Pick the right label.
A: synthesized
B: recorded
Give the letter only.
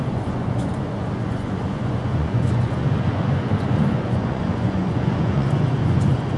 A